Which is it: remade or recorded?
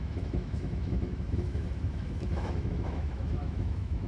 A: remade